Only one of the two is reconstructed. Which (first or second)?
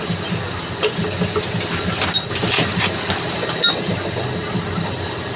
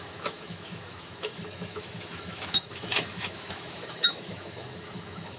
second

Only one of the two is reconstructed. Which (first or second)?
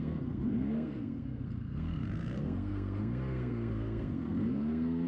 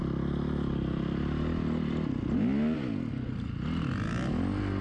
first